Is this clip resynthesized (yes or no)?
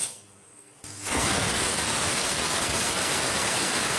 yes